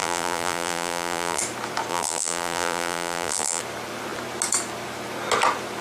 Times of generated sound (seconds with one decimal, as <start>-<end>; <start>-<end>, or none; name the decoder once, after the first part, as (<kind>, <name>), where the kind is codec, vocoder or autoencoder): 0.0-1.4 (vocoder, BigVGAN v2); 1.9-3.6